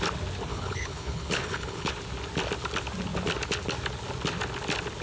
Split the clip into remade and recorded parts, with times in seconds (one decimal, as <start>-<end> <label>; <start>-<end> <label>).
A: 0.0-0.5 recorded; 0.5-1.9 remade; 1.9-5.0 recorded